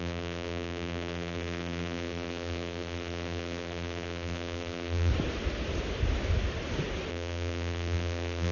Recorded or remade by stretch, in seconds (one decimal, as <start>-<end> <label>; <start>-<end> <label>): 0.0-5.1 remade; 5.1-7.1 recorded; 7.1-8.5 remade